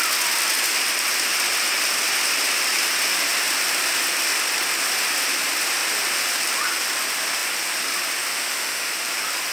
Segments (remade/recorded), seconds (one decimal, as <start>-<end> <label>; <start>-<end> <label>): 0.0-8.3 recorded; 8.3-8.9 remade; 8.9-9.5 recorded